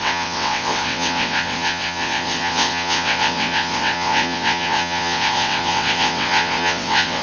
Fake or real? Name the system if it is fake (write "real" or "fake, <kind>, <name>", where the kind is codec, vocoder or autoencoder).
fake, vocoder, WaveNeXt